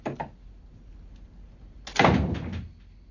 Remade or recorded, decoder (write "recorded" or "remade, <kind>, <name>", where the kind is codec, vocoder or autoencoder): recorded